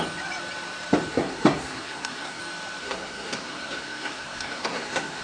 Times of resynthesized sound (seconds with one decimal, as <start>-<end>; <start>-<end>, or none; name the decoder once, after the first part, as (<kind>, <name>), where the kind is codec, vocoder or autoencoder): 1.1-2.4 (codec, SNAC); 2.8-5.2